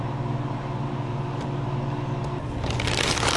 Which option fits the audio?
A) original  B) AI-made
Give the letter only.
A